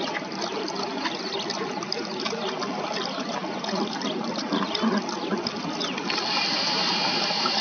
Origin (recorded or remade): recorded